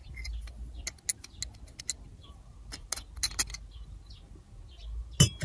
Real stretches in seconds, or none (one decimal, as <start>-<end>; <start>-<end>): 0.0-5.4

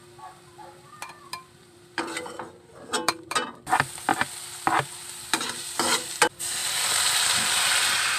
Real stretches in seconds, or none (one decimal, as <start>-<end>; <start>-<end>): 4.1-5.6; 6.6-8.2